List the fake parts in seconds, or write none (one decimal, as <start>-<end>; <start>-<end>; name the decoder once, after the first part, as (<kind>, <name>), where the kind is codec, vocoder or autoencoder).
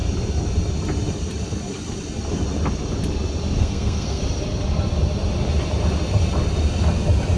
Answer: 3.6-4.2 (codec, SNAC)